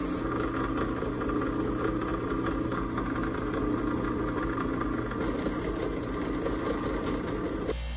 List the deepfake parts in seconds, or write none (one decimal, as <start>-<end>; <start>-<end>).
none